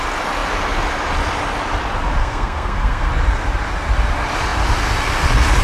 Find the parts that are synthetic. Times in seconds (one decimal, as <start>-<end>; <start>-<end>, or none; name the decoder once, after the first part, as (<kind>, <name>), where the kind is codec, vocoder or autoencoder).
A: 2.2-3.1 (codec, SNAC)